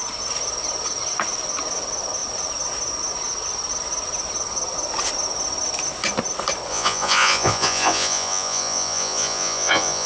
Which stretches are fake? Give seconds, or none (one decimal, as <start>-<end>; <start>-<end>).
6.7-10.1